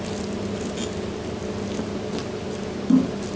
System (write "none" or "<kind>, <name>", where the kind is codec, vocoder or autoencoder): none